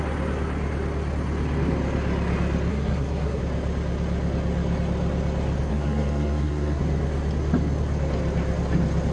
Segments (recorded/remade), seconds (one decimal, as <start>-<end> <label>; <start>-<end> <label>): 0.0-2.7 recorded; 2.7-3.4 remade; 3.4-5.7 recorded; 5.7-6.8 remade; 6.8-9.1 recorded